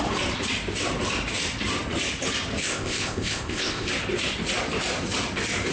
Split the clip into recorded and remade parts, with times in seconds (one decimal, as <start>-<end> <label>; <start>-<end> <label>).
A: 0.0-2.6 recorded; 2.6-3.9 remade; 3.9-5.7 recorded